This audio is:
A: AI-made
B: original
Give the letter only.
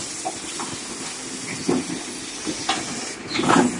B